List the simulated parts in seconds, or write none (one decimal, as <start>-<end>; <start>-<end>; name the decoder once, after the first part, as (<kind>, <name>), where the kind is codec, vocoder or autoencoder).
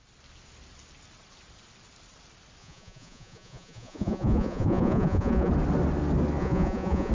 2.6-5.5 (vocoder, Vocos); 6.4-7.1